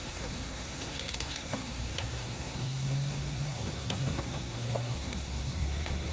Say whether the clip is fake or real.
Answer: fake